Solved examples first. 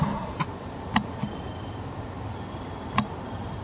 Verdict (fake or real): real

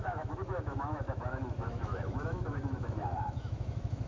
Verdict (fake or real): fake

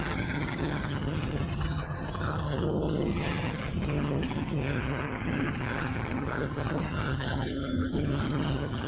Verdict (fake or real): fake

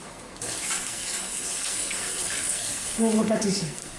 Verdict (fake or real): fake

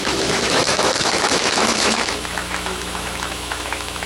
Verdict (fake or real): fake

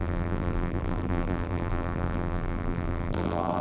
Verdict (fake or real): fake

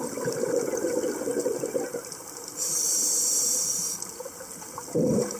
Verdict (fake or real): real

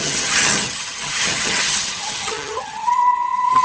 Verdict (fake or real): fake